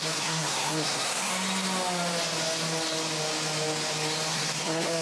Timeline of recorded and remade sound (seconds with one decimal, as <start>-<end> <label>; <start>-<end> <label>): 0.0-1.3 remade; 1.3-4.3 recorded; 4.3-5.0 remade